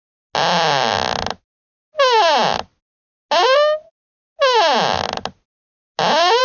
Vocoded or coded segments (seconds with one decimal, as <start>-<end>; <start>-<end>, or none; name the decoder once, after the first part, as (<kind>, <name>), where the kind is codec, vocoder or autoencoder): none